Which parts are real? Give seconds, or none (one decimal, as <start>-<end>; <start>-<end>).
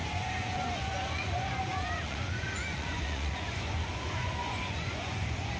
none